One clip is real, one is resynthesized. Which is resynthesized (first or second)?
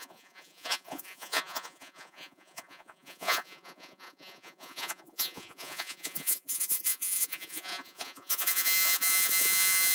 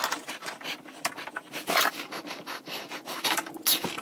first